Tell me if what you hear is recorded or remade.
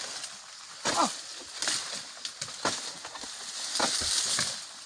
recorded